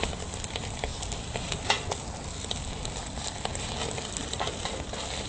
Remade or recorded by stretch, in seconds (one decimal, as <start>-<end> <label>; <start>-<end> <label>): 0.0-5.3 recorded